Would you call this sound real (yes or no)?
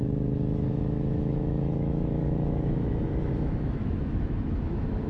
no